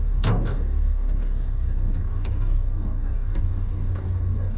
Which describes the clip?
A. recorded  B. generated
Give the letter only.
B